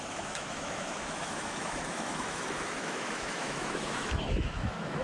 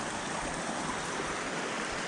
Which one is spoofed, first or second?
first